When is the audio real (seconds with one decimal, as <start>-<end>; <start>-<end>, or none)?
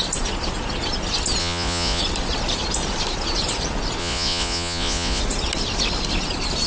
0.0-1.4; 2.0-4.0; 5.2-6.7